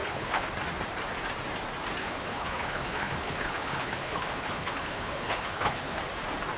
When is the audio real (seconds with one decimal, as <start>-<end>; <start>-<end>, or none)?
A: 0.5-2.0; 6.0-6.6